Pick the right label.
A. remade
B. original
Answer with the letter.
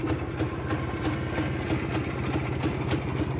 B